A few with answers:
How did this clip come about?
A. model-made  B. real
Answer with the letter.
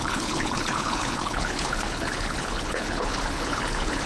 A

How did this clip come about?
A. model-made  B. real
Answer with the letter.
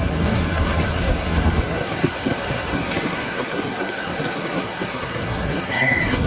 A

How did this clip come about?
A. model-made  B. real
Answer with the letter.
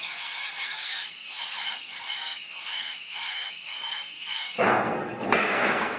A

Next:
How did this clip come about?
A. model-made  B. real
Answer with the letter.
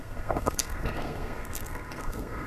A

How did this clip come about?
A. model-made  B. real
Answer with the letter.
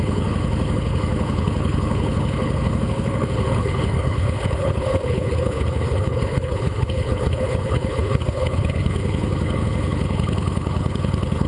A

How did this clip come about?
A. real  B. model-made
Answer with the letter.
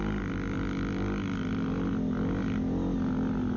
A